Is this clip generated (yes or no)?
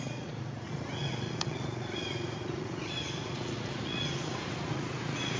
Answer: yes